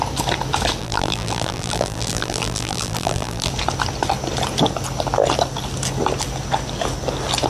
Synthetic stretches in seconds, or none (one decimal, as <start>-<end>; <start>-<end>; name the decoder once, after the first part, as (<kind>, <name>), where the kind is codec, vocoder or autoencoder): 0.8-3.5 (vocoder, BigVGAN v2)